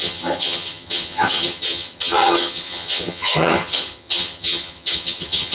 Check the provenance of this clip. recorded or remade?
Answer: remade